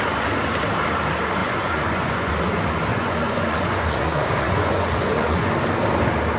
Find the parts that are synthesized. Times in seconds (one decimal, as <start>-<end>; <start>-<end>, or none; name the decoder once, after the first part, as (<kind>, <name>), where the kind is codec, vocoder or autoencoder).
1.4-2.3 (vocoder, Vocos); 2.9-5.5

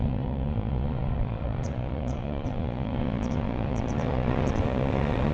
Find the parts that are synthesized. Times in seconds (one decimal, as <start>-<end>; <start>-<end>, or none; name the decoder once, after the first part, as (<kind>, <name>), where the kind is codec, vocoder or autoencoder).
0.0-5.3 (vocoder, Vocos)

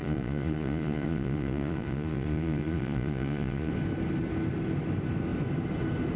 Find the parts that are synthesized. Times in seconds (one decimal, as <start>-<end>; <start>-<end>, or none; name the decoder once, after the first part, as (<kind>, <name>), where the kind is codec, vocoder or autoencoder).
0.0-3.7 (vocoder, Vocos)

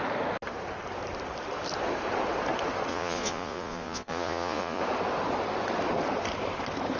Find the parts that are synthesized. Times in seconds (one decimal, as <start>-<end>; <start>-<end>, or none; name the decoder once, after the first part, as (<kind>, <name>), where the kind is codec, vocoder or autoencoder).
2.9-4.8 (vocoder, Vocos)

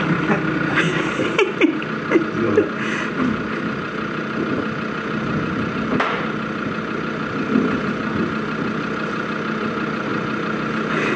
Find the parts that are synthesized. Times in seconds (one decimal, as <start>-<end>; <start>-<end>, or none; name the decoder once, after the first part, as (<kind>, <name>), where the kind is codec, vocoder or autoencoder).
none

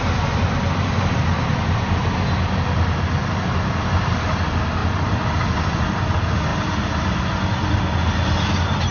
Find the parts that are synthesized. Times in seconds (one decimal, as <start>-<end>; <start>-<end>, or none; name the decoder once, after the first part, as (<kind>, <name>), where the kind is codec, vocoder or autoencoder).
none

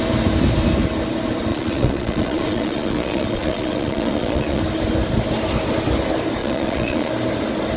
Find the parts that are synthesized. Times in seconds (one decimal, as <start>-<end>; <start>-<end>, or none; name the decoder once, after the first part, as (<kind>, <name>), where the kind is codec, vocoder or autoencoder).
1.5-4.6 (vocoder, Vocos); 6.4-7.1